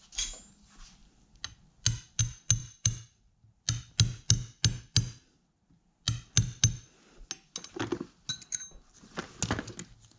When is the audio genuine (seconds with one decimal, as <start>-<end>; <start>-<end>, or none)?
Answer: 0.0-2.6; 3.6-10.2